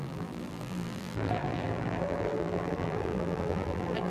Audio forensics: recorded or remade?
remade